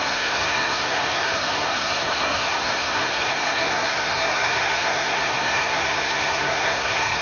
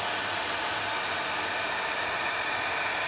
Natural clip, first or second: second